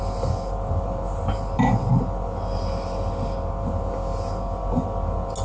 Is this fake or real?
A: real